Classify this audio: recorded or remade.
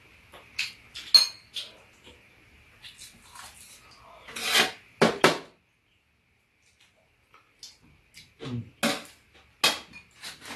recorded